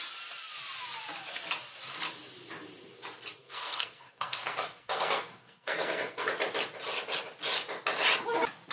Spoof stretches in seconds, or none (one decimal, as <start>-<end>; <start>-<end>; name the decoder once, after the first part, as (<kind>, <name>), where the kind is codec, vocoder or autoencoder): 3.4-6.3 (codec, SNAC)